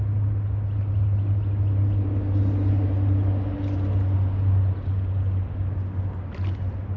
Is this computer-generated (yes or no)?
no